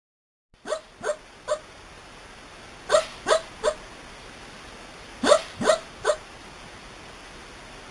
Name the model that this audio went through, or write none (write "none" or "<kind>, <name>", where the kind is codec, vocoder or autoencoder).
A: none